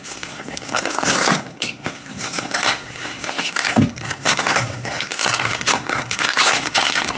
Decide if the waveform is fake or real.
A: fake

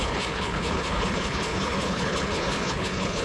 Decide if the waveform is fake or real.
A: fake